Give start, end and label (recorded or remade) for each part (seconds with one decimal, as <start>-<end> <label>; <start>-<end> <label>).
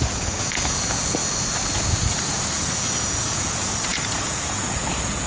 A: 0.0-1.2 remade; 1.2-1.7 recorded; 1.7-5.3 remade